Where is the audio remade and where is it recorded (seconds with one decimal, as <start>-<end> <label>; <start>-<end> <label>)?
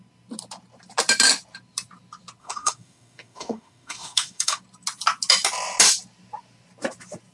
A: 0.0-2.4 recorded; 2.4-4.6 remade; 4.6-7.3 recorded